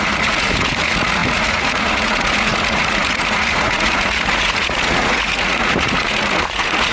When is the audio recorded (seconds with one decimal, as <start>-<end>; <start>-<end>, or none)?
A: none